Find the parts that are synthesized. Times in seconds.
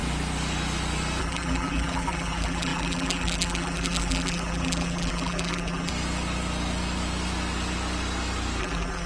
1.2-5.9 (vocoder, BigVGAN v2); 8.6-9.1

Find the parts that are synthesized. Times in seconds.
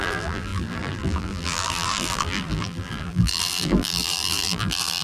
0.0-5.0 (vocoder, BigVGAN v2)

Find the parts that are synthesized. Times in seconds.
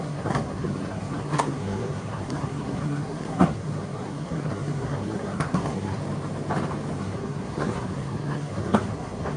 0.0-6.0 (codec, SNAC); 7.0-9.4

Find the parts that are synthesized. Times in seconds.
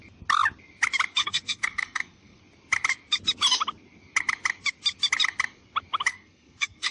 1.2-2.4 (codec, SNAC); 6.1-6.9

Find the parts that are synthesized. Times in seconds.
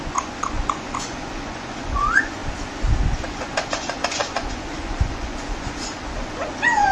0.0-2.4 (vocoder, Vocos); 3.1-6.9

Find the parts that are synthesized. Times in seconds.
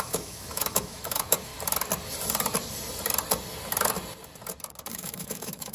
0.0-1.5 (autoencoder, DAC-VAE); 4.9-5.7